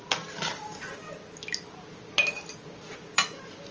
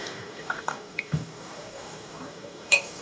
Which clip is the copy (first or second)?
second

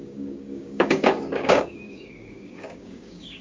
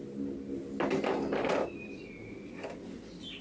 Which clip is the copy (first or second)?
first